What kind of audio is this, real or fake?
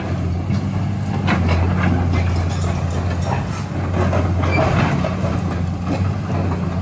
real